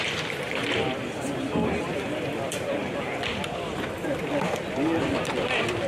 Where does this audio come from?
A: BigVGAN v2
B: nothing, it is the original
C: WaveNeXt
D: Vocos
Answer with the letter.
A